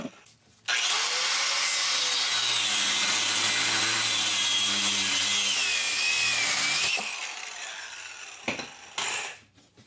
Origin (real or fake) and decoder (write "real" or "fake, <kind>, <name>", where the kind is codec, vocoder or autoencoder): real